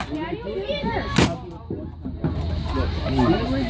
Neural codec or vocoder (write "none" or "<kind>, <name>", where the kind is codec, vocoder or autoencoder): none